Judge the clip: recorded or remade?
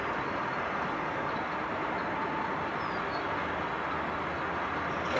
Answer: recorded